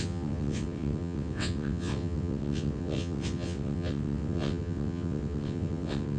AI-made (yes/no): yes